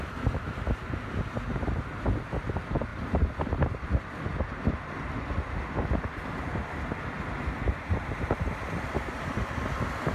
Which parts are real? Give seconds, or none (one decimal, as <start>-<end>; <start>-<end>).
0.0-2.9; 4.2-10.1